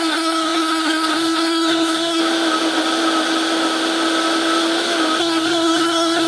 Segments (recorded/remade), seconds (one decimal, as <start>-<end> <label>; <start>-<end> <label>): 0.0-2.2 remade; 2.2-5.2 recorded; 5.2-6.3 remade